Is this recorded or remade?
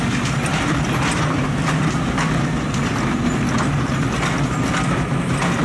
recorded